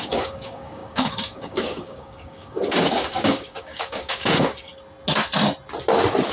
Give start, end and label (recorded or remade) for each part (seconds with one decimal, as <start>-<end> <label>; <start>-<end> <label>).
0.0-4.7 remade; 4.7-6.3 recorded